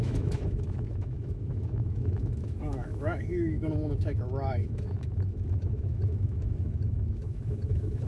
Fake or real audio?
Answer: fake